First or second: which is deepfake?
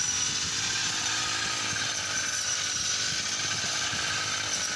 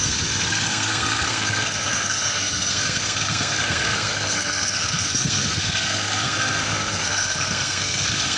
second